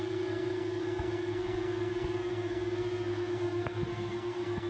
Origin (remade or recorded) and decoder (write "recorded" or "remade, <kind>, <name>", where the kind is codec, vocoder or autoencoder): remade, codec, SNAC